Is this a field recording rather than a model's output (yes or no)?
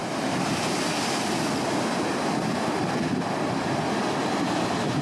yes